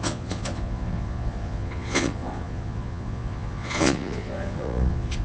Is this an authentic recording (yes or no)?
no